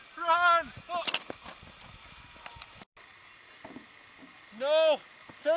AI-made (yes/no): no